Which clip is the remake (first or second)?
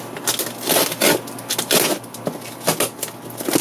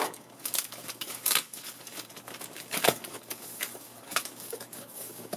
second